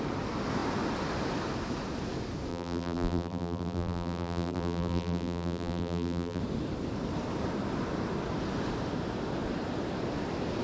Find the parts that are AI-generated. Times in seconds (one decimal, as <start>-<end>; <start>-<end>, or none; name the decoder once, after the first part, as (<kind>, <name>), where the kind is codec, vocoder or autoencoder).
2.5-6.4 (vocoder, BigVGAN v2)